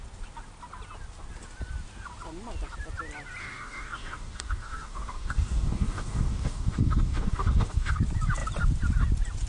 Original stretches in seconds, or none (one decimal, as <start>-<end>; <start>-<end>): 0.0-3.4; 7.9-9.5